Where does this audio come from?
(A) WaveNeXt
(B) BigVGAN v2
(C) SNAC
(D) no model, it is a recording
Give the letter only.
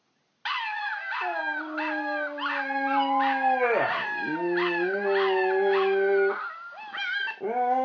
D